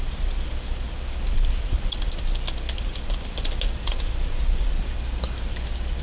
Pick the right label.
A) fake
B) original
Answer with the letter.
B